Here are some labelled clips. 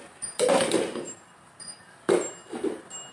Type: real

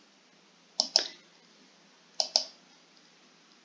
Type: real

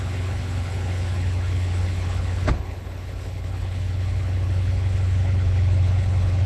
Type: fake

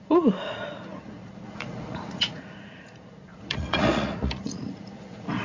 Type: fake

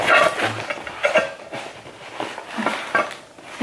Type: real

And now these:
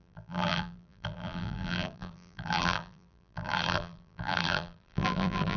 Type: fake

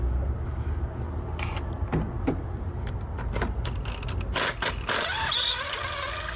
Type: real